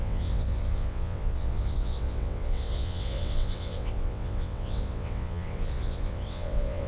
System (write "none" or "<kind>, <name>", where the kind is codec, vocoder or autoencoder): vocoder, WaveNeXt